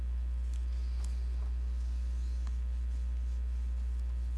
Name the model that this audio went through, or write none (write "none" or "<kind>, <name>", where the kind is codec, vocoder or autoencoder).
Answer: none